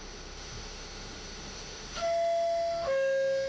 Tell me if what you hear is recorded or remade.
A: remade